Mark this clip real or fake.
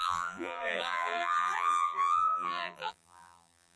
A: fake